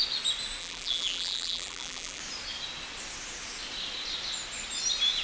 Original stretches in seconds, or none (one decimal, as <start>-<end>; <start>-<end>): 0.0-0.6; 2.2-5.2